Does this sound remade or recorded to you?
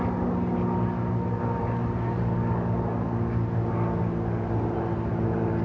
recorded